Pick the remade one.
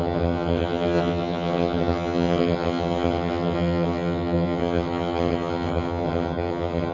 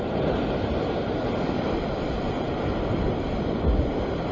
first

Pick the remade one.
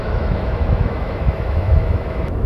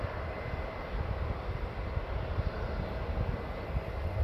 first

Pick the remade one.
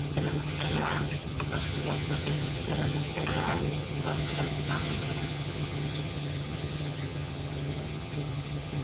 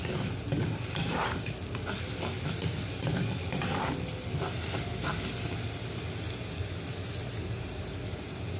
first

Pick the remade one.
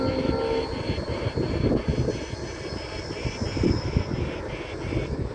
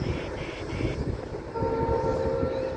second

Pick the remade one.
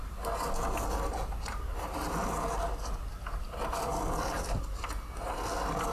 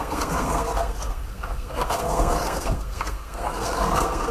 second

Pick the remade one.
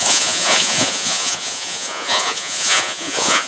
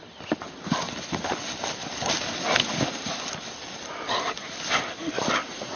first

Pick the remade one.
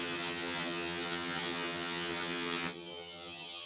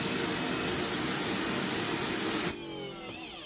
first